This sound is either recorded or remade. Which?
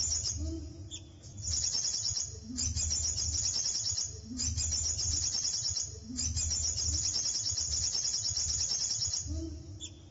recorded